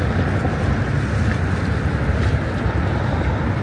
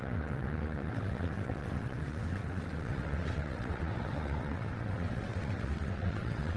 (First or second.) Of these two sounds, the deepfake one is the second